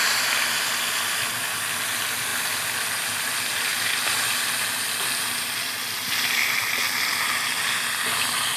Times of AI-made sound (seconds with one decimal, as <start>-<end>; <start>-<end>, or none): none